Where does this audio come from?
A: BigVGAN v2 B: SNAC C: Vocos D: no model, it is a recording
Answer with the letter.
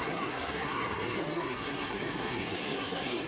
B